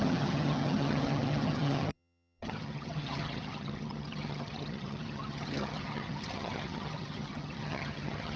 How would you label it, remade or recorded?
remade